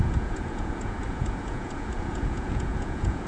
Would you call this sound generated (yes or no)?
yes